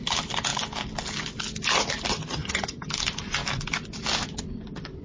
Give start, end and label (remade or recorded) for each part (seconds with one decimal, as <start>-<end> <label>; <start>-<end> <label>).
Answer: 0.0-2.1 recorded; 2.1-2.9 remade; 2.9-5.0 recorded